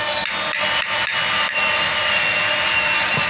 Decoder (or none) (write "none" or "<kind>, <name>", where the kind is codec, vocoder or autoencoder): none